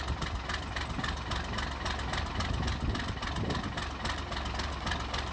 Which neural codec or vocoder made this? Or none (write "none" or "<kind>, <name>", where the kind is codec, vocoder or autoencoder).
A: none